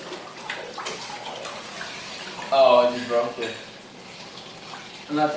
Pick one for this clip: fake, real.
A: real